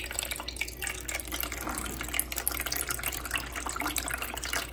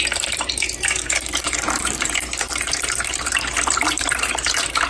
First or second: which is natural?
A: first